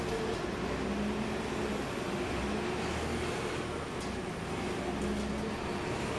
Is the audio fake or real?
real